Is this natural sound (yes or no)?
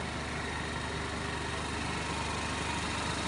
yes